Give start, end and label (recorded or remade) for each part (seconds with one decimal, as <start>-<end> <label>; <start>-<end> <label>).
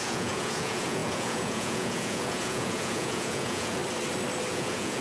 0.0-3.8 remade; 3.8-4.5 recorded; 4.5-5.0 remade